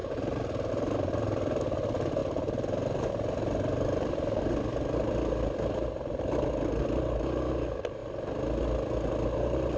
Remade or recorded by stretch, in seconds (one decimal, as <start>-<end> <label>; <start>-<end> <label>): 0.0-9.8 recorded